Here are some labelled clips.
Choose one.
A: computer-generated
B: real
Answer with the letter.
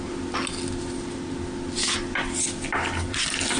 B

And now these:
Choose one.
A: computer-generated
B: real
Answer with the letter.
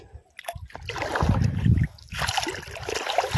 B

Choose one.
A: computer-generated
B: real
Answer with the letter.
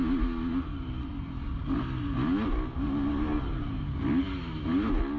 B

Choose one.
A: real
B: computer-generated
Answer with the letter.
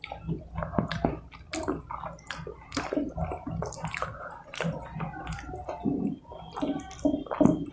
A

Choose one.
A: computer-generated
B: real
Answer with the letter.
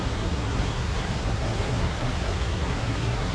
A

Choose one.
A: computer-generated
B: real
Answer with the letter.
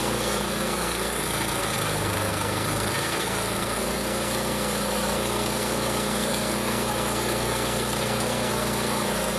A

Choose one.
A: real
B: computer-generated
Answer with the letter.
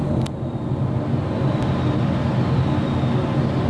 A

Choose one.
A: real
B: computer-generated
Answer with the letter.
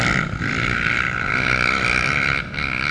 A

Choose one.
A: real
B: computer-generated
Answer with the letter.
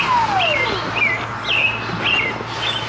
A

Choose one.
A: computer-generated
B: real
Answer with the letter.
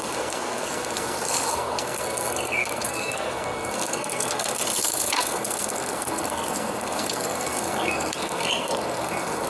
A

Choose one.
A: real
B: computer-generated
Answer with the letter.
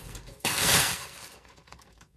B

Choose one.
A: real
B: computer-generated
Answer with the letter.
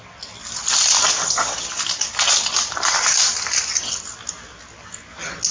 A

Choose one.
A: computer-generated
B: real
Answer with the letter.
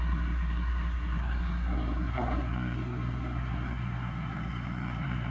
A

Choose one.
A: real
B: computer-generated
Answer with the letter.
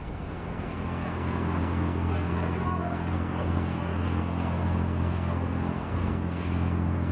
B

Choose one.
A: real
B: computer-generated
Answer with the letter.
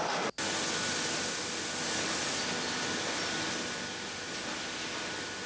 A